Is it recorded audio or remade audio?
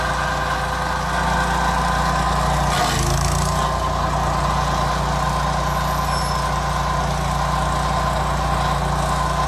recorded